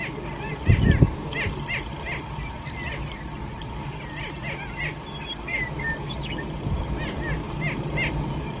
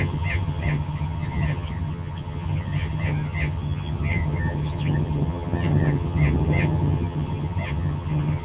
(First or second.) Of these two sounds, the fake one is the second